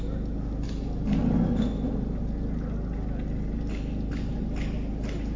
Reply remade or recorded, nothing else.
recorded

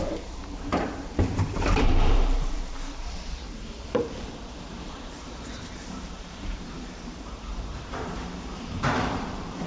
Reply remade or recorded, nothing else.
remade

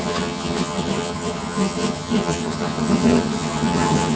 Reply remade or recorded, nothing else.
remade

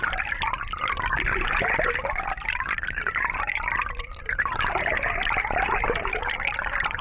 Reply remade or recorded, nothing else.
recorded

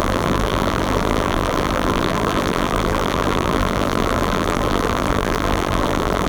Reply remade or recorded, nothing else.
remade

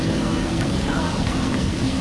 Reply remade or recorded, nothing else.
remade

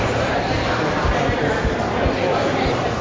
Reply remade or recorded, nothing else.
recorded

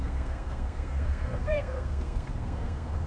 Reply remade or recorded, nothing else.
remade